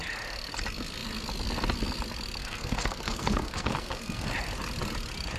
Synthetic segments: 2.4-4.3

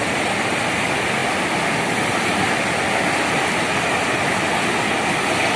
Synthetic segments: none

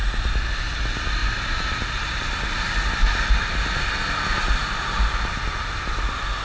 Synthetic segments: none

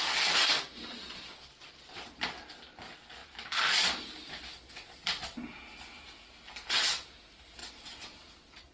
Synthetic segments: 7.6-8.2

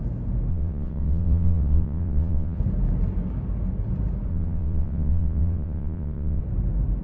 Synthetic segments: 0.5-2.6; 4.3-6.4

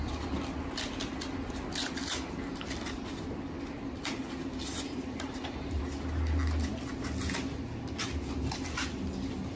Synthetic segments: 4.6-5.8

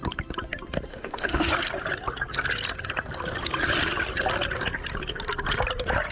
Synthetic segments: 0.9-1.5